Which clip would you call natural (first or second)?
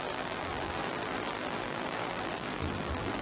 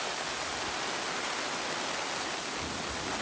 second